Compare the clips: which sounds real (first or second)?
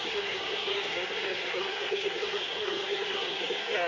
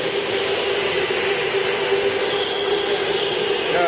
second